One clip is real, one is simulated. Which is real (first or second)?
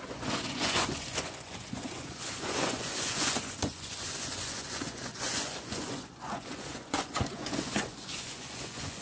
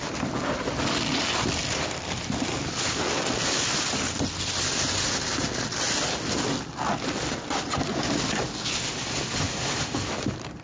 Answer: second